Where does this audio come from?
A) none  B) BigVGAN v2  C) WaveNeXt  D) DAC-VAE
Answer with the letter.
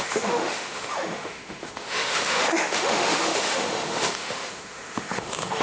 D